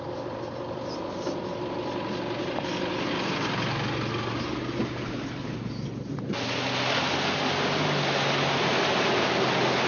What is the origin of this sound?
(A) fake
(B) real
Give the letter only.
B